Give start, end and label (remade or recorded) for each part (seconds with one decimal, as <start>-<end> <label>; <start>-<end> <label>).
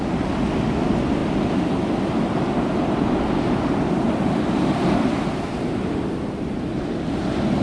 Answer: 0.0-7.6 recorded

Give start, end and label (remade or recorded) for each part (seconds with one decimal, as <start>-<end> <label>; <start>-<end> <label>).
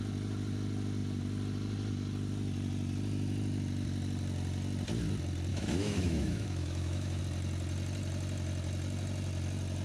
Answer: 0.0-5.5 recorded; 5.5-7.2 remade; 7.2-9.8 recorded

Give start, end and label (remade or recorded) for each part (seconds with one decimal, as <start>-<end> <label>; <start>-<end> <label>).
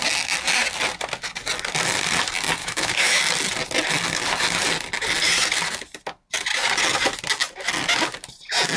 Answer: 0.0-2.6 recorded; 2.6-3.2 remade; 3.2-8.8 recorded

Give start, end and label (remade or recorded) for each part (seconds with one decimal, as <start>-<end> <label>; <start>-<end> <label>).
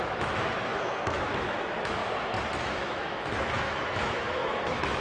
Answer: 0.0-2.0 remade; 2.0-2.6 recorded; 2.6-5.0 remade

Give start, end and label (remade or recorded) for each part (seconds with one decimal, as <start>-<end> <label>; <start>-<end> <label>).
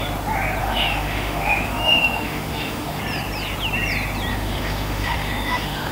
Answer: 0.0-0.6 recorded; 0.6-3.0 remade; 3.0-4.3 recorded; 4.3-5.9 remade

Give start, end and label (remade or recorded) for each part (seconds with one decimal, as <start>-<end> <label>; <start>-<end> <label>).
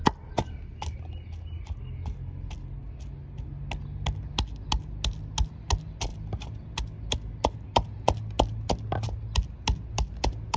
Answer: 0.0-10.6 recorded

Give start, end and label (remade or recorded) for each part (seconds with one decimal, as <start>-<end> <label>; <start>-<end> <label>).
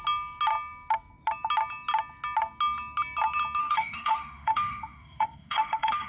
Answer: 0.0-3.6 recorded; 3.6-6.1 remade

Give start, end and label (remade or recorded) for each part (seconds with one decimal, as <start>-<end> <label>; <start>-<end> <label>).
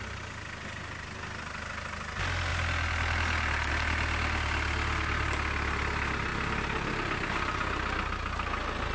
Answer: 0.0-8.9 recorded